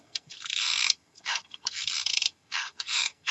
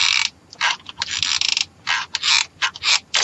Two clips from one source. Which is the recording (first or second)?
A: second